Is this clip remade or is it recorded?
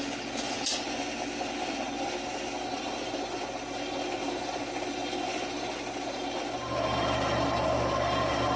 recorded